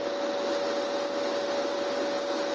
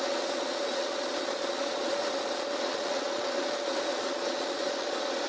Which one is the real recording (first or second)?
first